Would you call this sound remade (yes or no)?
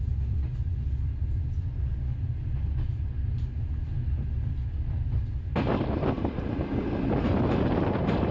no